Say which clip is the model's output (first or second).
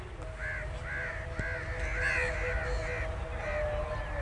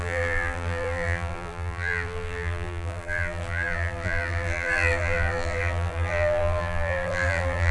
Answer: second